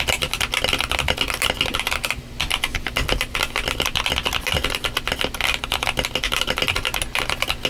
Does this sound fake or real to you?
real